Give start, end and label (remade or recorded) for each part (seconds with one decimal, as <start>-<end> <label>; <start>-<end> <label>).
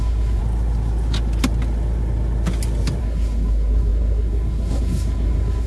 0.0-0.4 remade; 0.4-3.0 recorded; 3.0-5.7 remade